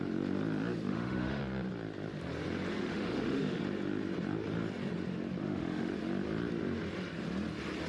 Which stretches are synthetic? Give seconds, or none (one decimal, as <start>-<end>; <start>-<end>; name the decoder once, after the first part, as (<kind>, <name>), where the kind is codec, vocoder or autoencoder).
0.9-1.4 (autoencoder, DAC-VAE); 2.8-3.6; 5.4-5.9

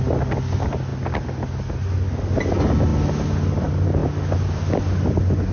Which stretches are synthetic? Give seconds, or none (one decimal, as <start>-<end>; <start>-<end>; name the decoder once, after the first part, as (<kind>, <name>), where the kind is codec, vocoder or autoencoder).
none

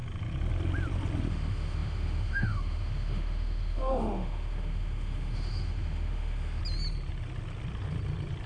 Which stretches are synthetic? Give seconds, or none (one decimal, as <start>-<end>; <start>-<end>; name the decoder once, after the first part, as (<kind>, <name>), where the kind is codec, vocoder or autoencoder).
1.3-6.6 (autoencoder, DAC-VAE)

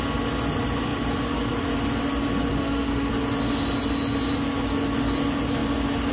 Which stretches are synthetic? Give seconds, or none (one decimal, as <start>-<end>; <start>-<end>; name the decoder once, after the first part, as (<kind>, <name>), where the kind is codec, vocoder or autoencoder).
2.5-3.1 (autoencoder, DAC-VAE)

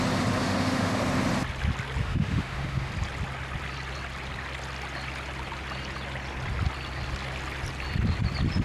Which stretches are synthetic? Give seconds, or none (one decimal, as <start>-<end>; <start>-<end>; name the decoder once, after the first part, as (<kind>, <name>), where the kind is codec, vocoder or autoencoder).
0.4-1.0 (autoencoder, DAC-VAE); 2.0-2.9